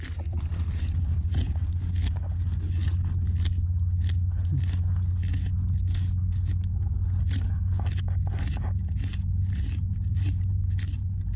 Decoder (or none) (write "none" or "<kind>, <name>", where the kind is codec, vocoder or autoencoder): none